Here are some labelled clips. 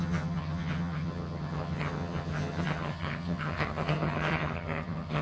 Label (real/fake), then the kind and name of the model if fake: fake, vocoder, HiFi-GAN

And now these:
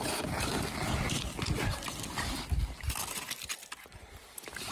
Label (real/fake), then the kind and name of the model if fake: real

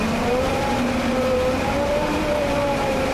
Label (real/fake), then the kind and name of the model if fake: fake, vocoder, BigVGAN v2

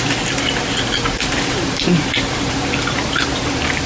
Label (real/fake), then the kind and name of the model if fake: real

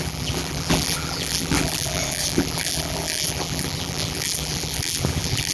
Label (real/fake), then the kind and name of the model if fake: fake, vocoder, BigVGAN v2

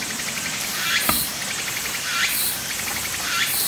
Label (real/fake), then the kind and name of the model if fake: fake, vocoder, BigVGAN v2